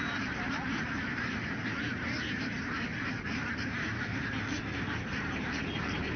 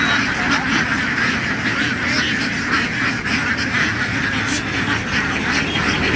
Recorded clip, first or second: second